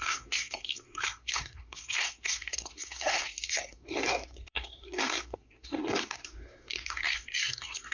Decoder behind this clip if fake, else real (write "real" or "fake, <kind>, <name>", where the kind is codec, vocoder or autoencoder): fake, codec, SNAC